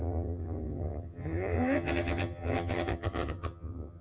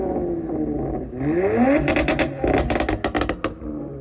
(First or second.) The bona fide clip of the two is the second